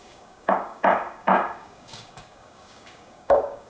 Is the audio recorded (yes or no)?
no